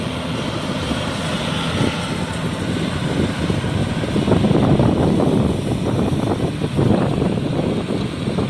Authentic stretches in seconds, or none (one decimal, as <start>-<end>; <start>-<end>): 0.0-3.8